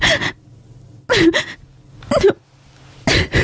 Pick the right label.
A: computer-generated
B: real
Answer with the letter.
B